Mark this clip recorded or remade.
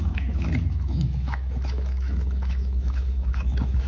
remade